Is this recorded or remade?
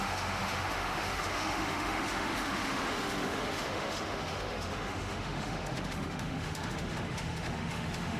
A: remade